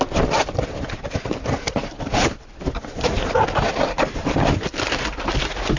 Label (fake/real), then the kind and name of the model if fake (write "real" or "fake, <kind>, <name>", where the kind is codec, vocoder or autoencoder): real